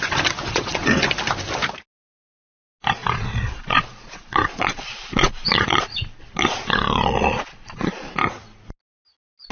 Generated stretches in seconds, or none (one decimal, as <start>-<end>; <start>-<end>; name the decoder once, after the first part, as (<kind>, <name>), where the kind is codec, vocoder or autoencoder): 0.4-0.9 (vocoder, Vocos); 3.0-8.1